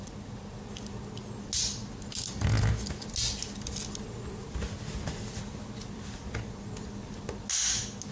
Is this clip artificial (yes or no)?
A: no